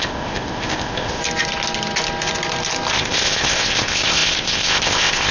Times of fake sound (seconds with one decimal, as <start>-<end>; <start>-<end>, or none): 0.0-1.2; 2.9-5.3